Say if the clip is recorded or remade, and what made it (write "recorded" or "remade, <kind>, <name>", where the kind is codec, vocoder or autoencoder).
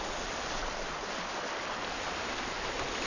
recorded